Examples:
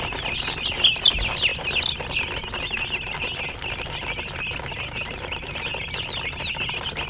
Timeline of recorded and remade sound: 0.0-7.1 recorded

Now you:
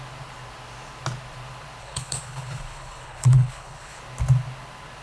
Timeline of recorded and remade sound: 0.0-1.8 recorded; 1.8-4.0 remade; 4.0-5.0 recorded

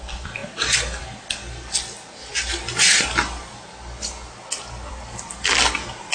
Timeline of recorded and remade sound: 0.0-6.1 recorded

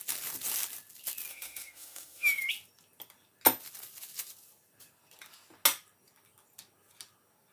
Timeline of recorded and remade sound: 0.0-1.3 recorded; 1.3-2.5 remade; 2.5-7.5 recorded

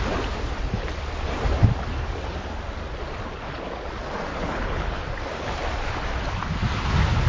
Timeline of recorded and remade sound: 0.0-4.3 recorded; 4.3-5.0 remade; 5.0-7.3 recorded